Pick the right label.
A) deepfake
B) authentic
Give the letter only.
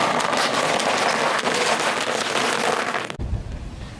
B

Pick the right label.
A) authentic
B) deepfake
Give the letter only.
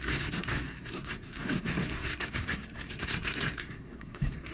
B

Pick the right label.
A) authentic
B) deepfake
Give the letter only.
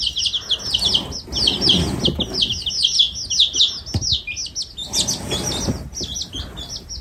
A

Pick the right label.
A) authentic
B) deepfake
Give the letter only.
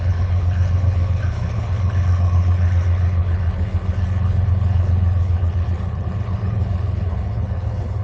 B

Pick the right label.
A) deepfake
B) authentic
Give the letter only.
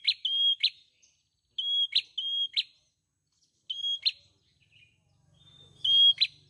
B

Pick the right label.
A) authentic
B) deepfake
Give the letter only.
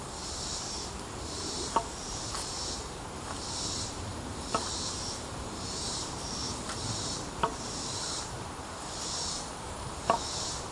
B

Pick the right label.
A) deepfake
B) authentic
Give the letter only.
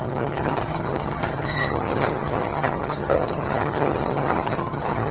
A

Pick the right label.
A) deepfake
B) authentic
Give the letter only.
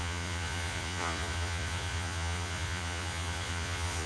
A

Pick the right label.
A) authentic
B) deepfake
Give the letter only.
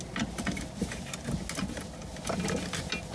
A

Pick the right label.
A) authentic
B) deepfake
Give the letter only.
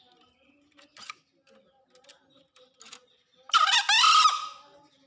A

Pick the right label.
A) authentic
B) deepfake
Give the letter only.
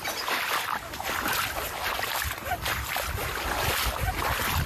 A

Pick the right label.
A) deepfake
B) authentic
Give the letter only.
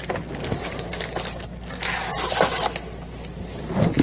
B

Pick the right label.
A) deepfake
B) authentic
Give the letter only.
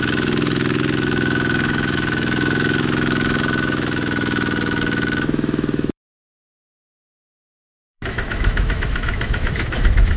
A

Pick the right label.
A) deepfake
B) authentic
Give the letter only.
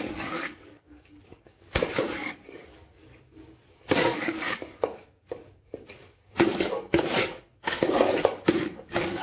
A